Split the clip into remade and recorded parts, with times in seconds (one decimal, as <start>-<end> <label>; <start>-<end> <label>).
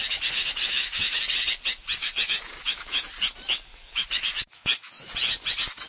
0.0-1.4 remade; 1.4-2.0 recorded; 2.0-3.1 remade; 3.1-3.7 recorded; 3.7-5.1 remade; 5.1-5.9 recorded